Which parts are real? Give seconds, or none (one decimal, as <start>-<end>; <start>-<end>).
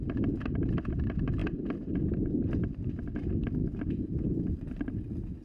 0.0-5.4